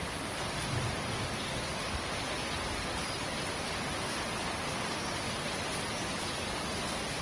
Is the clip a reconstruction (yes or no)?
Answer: no